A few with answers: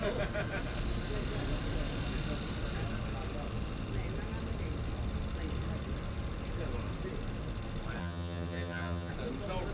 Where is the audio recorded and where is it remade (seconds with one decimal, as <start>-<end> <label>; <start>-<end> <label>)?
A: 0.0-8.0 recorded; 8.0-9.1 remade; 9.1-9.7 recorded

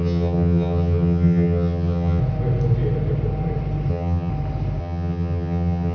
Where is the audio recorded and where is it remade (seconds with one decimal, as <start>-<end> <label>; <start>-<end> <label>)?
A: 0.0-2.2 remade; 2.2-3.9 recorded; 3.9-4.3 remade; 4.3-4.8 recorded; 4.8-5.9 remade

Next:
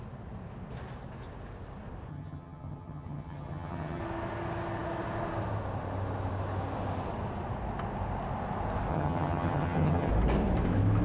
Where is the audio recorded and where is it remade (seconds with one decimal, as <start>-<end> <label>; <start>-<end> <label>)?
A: 0.0-2.1 recorded; 2.1-4.0 remade; 4.0-8.9 recorded; 8.9-10.1 remade; 10.1-11.0 recorded

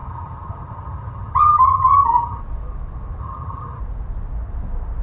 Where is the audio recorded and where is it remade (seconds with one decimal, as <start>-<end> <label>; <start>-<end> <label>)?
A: 0.0-2.4 remade; 2.4-3.2 recorded; 3.2-3.8 remade; 3.8-5.0 recorded